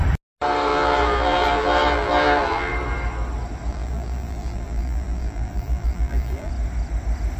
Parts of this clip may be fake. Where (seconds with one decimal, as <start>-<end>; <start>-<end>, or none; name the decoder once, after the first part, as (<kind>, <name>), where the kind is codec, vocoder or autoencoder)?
0.7-2.7 (vocoder, BigVGAN v2); 3.7-6.5